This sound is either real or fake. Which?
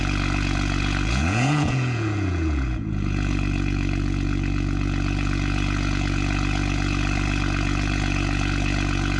fake